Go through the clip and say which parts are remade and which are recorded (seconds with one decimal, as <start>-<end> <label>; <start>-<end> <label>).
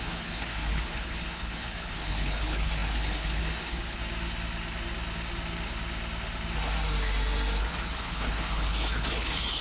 0.0-4.0 remade; 4.0-7.6 recorded; 7.6-9.6 remade